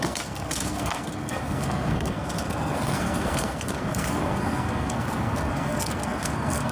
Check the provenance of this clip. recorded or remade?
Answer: remade